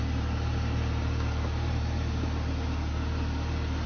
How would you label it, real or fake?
real